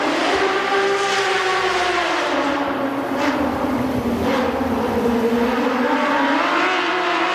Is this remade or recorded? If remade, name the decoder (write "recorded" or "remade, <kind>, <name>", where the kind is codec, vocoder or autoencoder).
recorded